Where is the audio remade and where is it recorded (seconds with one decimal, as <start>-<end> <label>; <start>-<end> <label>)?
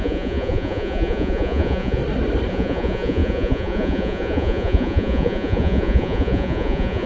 0.0-2.0 remade; 2.0-2.5 recorded; 2.5-7.1 remade